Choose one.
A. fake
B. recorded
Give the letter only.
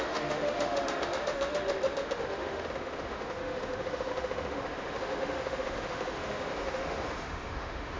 A